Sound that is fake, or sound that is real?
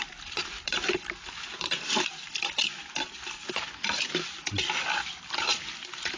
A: fake